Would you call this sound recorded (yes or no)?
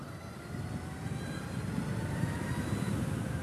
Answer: yes